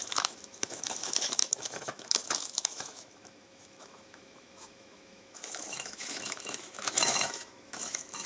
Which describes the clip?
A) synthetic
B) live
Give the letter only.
A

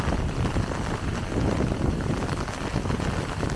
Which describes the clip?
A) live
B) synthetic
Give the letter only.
A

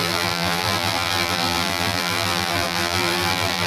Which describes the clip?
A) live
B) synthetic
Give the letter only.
B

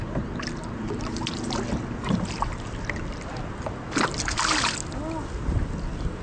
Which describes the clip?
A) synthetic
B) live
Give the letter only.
B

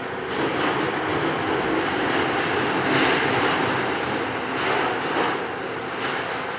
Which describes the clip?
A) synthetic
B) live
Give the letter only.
B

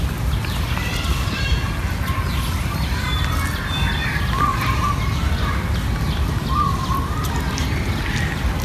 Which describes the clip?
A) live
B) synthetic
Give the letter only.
A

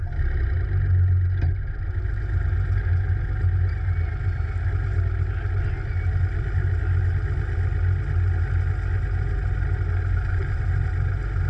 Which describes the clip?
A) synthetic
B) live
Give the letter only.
B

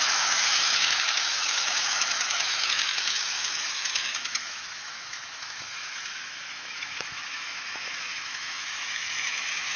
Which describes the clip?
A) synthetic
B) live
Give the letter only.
A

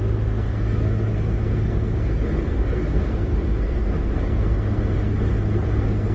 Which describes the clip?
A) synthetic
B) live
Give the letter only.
A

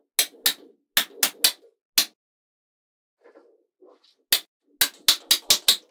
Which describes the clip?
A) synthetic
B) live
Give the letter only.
B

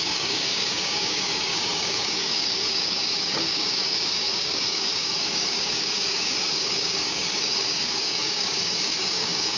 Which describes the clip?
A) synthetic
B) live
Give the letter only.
A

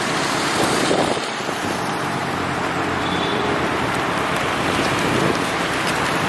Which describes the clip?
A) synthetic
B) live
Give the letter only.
A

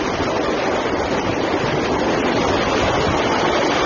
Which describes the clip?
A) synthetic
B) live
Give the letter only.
B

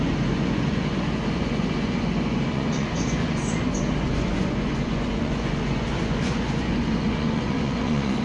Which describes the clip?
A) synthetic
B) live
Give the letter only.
A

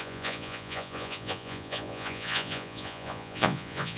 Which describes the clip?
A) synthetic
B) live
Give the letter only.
A